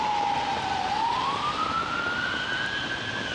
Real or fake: real